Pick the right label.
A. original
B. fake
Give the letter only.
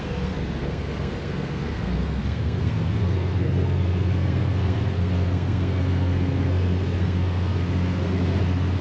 B